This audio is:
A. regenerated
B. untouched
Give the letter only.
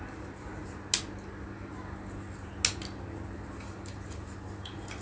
B